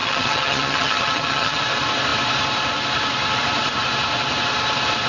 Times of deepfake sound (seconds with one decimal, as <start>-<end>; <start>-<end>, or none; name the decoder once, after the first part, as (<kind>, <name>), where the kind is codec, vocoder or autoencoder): 0.0-1.6 (vocoder, HiFi-GAN)